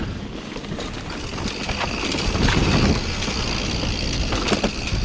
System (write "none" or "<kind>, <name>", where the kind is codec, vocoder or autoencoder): none